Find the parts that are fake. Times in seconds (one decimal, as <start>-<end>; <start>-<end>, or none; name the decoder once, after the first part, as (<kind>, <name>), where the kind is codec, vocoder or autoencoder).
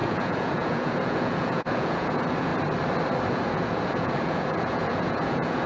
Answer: 0.0-2.5 (vocoder, Vocos); 3.3-5.7